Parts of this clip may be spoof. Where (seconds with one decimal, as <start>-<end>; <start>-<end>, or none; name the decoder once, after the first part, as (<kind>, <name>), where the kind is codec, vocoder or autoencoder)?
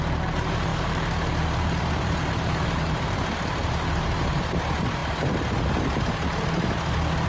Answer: 0.7-3.2 (vocoder, BigVGAN v2)